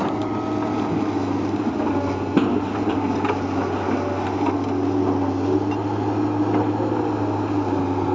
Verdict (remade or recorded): recorded